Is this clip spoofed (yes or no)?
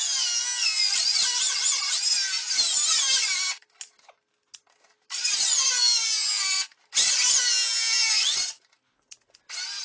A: no